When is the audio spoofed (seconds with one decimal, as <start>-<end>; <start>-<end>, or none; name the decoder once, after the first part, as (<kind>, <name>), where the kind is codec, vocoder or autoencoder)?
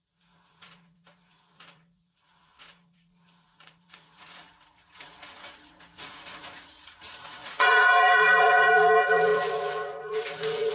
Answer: 0.0-10.7 (vocoder, Vocos)